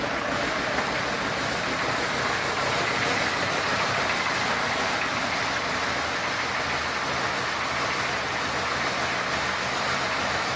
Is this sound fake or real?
real